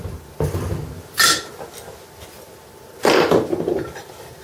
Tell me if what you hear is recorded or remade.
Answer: recorded